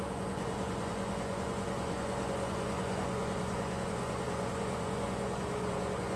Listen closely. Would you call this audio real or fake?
fake